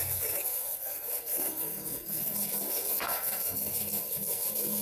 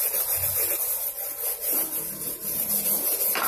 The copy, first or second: first